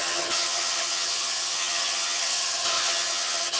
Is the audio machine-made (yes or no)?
yes